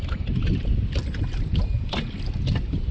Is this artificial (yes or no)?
no